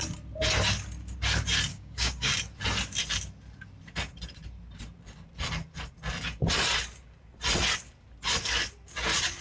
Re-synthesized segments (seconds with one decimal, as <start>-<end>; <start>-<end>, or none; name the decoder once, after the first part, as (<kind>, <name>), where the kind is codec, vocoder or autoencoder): 1.7-2.3 (codec, DAC)